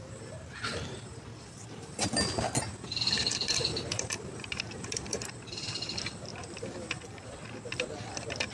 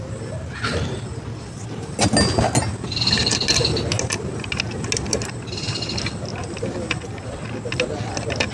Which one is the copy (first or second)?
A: first